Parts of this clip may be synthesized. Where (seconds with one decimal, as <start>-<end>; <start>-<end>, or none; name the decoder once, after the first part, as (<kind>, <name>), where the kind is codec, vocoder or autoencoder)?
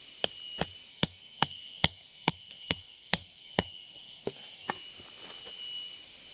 0.9-4.7 (codec, SNAC)